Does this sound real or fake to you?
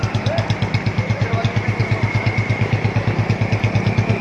real